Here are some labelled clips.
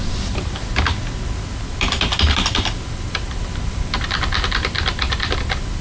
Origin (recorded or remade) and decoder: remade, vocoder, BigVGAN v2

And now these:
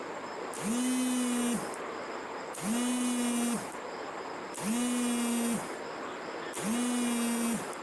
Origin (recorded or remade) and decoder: recorded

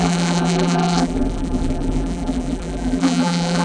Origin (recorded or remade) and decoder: remade, vocoder, BigVGAN v2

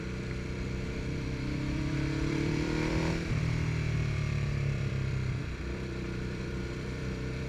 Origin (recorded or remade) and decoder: remade, vocoder, BigVGAN v2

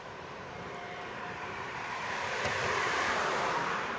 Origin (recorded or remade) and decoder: remade, vocoder, BigVGAN v2